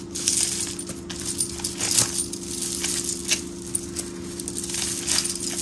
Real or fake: real